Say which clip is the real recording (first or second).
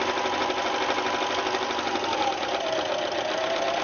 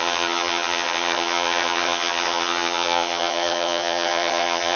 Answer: first